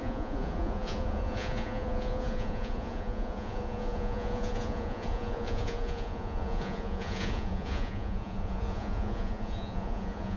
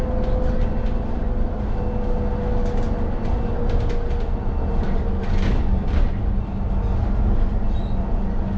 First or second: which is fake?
first